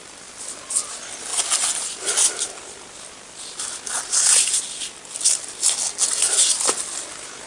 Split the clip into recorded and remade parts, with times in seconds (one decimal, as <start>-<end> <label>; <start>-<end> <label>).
0.0-7.5 recorded